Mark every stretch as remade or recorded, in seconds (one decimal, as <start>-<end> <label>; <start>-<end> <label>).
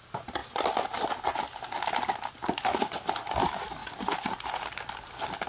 0.0-5.5 recorded